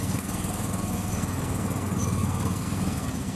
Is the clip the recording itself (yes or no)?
no